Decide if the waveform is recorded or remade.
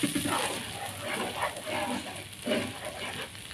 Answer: recorded